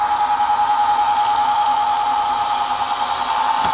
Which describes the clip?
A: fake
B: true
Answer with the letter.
B